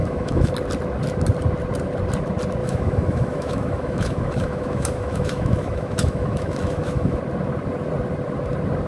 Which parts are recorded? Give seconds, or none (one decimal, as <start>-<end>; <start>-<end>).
0.5-2.6; 7.2-8.9

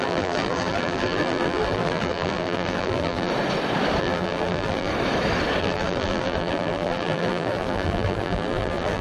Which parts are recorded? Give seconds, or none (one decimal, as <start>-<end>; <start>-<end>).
3.3-4.0; 4.9-5.6

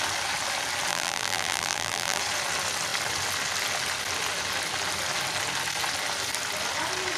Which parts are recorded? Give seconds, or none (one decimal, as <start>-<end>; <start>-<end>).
0.0-0.9; 2.2-7.2

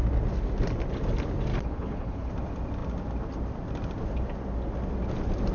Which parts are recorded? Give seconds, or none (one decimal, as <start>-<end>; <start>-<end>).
0.0-1.5; 2.3-5.5

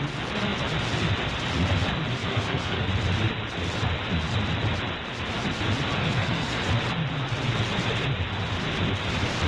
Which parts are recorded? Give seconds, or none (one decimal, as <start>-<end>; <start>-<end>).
0.0-2.2; 2.9-6.0; 6.7-9.5